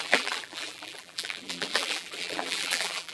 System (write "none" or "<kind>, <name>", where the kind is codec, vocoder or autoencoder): vocoder, BigVGAN v2